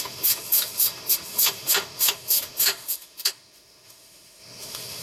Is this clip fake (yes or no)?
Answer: yes